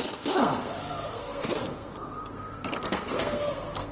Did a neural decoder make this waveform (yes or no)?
yes